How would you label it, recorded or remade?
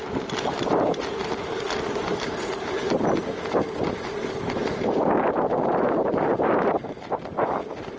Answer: remade